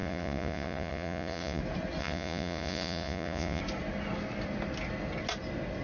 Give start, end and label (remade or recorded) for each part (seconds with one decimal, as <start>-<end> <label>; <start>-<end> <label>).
0.0-1.6 remade; 1.6-2.0 recorded; 2.0-3.6 remade; 3.6-5.8 recorded

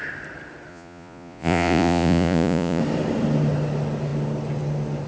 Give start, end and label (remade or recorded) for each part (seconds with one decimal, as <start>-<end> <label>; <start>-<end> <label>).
0.0-0.7 recorded; 0.7-2.8 remade; 2.8-5.1 recorded